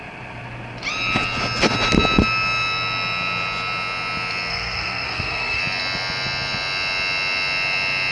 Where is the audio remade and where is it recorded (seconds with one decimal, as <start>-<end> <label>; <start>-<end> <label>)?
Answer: 0.0-4.5 recorded; 4.5-5.6 remade; 5.6-8.1 recorded